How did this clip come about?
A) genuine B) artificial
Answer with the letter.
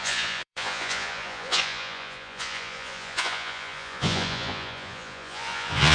B